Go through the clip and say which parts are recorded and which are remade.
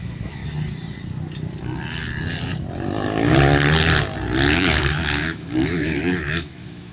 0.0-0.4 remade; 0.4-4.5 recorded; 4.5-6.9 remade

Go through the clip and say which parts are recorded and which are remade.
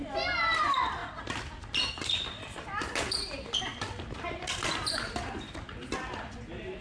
0.0-6.8 recorded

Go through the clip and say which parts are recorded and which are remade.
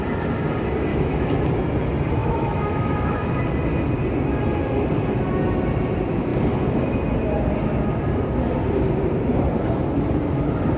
0.0-0.9 recorded; 0.9-1.4 remade; 1.4-2.2 recorded; 2.2-3.3 remade; 3.3-10.8 recorded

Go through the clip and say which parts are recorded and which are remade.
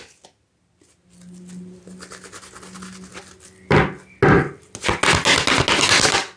0.0-6.4 recorded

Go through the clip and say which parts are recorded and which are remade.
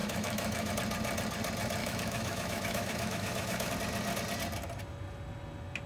0.0-0.7 remade; 0.7-1.8 recorded; 1.8-3.7 remade; 3.7-5.9 recorded